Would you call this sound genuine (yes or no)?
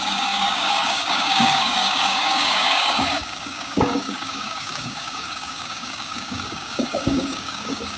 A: no